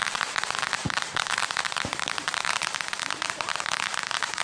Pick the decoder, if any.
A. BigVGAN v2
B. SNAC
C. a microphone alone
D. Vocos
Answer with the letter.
A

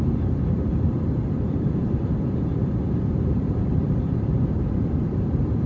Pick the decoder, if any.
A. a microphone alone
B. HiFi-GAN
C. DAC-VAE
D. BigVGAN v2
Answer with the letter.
D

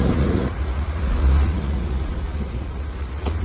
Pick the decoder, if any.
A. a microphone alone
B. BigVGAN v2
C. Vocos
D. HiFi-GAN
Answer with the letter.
C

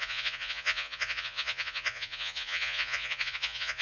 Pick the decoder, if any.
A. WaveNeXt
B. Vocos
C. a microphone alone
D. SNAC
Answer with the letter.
B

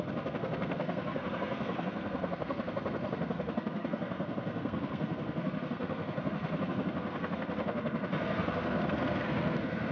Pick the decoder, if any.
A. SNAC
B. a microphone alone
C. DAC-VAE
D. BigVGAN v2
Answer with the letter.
A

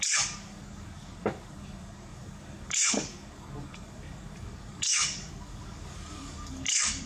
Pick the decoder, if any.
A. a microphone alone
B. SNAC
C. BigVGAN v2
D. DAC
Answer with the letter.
D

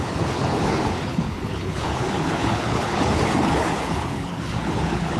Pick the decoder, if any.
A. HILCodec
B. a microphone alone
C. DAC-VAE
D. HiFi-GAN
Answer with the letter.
A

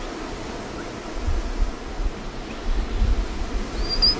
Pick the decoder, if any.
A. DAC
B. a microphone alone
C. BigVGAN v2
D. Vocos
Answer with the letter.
B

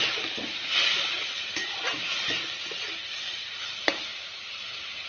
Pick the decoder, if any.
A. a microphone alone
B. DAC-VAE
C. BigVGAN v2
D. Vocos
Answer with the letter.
A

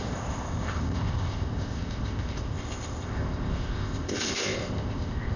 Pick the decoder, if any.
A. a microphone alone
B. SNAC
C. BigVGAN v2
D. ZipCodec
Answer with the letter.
D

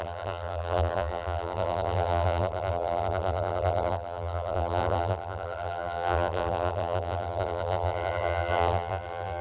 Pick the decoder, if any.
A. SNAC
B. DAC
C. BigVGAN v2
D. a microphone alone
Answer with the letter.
C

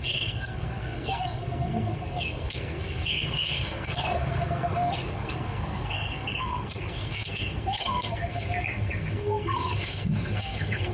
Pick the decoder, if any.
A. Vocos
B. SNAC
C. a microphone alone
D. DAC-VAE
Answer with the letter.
B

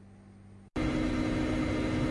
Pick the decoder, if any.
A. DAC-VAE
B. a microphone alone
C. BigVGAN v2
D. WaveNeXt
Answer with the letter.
B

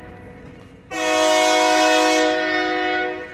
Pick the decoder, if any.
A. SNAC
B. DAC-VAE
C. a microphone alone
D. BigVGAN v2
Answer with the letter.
C